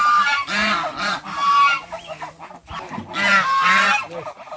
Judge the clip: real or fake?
real